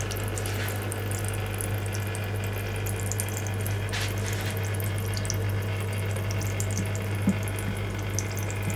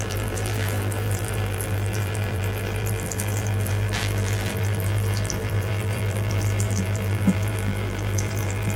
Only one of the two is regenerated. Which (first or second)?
second